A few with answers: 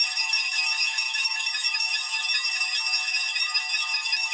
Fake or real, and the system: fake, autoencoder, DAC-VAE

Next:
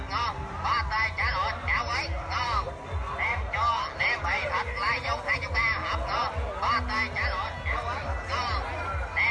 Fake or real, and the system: real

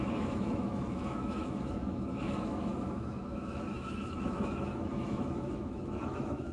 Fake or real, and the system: fake, autoencoder, DAC-VAE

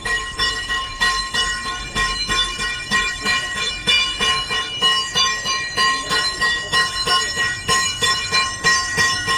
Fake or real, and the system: fake, autoencoder, DAC-VAE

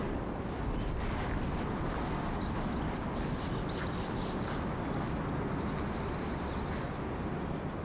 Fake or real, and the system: real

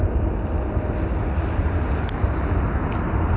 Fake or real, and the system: real